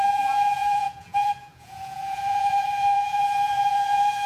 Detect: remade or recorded remade